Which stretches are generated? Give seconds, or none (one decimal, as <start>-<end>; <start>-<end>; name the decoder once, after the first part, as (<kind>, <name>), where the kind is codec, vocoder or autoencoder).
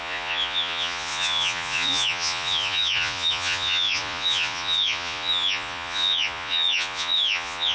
0.0-7.7 (vocoder, Vocos)